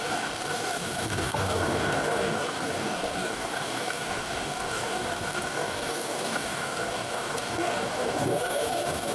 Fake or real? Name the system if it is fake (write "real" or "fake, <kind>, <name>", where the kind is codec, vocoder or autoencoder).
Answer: fake, codec, DAC